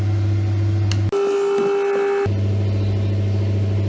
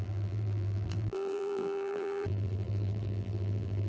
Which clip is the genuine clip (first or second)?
first